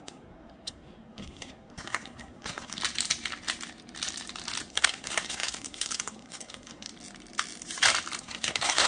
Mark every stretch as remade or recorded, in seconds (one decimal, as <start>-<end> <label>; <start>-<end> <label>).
0.0-2.8 remade; 2.8-4.7 recorded; 4.7-6.9 remade; 6.9-8.2 recorded; 8.2-8.9 remade